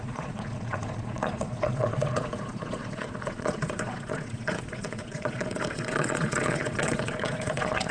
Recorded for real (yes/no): no